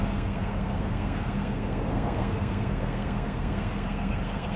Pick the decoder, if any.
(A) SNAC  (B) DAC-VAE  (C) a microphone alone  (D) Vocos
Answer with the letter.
A